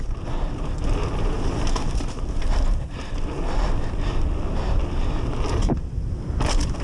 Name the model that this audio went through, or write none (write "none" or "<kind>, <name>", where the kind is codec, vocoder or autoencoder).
none